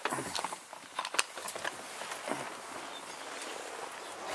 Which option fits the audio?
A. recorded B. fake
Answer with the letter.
A